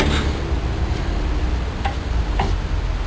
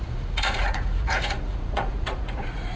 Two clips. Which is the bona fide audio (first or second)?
first